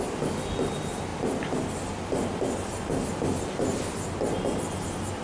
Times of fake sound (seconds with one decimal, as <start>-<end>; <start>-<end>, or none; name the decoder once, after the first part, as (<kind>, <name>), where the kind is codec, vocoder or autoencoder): none